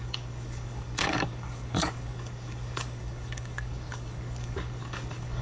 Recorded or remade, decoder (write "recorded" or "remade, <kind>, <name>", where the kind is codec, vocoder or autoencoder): remade, codec, DAC